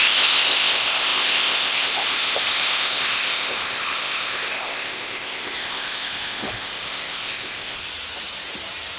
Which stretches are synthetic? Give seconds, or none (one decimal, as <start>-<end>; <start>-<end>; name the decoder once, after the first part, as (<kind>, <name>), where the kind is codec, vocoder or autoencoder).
0.0-7.8 (codec, ZipCodec)